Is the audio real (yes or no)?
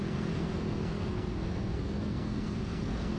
no